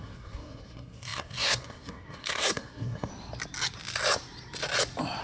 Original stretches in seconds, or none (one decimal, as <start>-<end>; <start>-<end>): 3.1-5.2